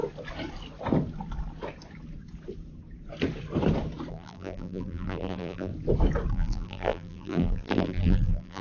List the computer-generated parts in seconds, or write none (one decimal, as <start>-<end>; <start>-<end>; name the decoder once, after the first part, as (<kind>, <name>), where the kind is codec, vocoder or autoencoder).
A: 4.1-5.7 (vocoder, BigVGAN v2); 6.3-8.6

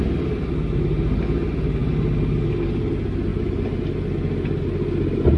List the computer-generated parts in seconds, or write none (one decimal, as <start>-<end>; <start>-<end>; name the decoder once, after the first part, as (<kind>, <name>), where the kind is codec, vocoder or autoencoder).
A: none

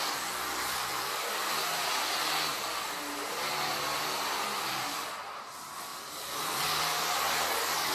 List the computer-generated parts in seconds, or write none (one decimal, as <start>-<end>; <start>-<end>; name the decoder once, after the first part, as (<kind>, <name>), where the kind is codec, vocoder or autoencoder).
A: 5.9-6.7 (vocoder, BigVGAN v2)

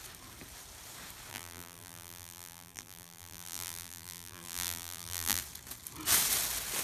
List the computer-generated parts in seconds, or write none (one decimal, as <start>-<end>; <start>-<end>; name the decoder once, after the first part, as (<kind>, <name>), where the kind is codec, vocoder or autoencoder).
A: 1.3-5.4 (vocoder, BigVGAN v2)

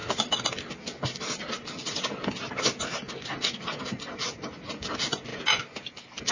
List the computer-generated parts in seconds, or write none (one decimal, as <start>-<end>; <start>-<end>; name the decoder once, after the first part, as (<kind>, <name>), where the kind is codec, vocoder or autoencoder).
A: 0.0-5.3 (vocoder, BigVGAN v2)